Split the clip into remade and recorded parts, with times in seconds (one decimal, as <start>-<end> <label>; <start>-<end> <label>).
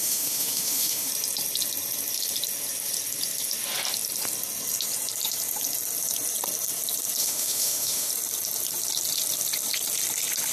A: 0.0-1.1 remade; 1.1-7.2 recorded; 7.2-8.1 remade; 8.1-10.5 recorded